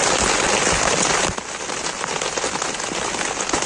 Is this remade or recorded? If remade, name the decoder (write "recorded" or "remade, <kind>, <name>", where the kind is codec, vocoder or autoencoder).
recorded